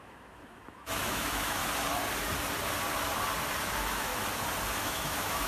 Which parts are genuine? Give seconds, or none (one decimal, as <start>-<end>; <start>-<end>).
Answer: 1.6-3.6; 4.1-4.8